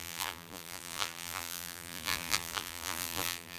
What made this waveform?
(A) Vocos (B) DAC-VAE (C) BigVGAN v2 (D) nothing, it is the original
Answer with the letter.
C